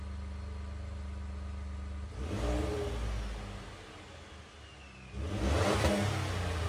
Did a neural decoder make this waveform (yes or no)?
no